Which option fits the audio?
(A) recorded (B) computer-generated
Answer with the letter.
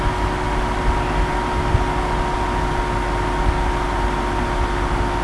A